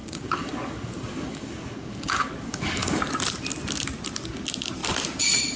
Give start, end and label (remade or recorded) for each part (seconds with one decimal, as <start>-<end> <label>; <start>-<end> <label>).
0.0-3.0 remade; 3.0-5.6 recorded